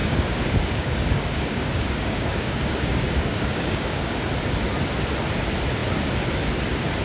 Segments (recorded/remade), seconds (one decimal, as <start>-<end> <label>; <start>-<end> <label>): 0.0-4.2 remade; 4.2-7.0 recorded